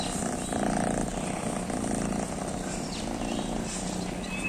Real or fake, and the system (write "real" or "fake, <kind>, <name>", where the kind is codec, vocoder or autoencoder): real